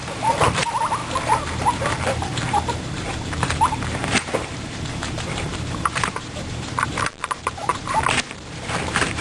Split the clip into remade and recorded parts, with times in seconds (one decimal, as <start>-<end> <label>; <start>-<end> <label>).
0.0-1.0 remade; 1.0-1.6 recorded; 1.6-9.2 remade